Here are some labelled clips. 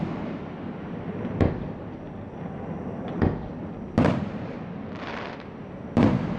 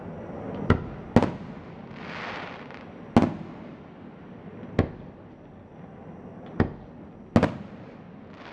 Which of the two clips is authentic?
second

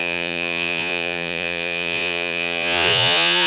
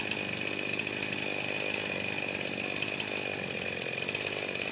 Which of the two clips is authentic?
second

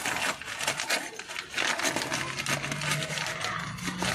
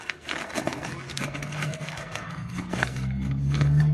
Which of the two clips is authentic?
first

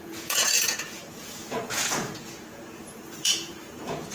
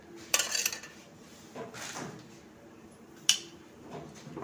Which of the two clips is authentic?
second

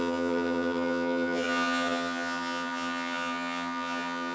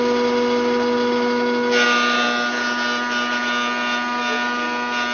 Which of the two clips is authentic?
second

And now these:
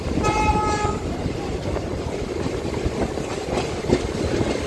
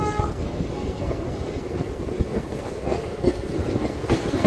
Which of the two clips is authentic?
first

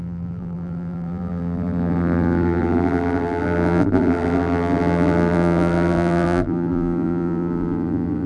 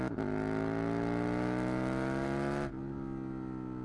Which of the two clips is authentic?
second